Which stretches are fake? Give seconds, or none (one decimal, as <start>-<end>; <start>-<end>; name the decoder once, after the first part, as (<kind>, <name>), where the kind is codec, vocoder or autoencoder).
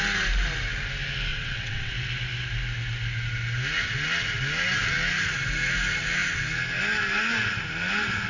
1.3-1.9 (vocoder, WaveNeXt)